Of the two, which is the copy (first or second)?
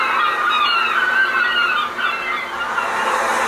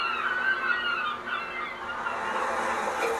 first